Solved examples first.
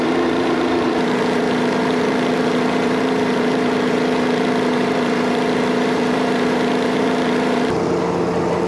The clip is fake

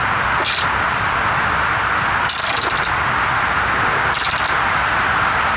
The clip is real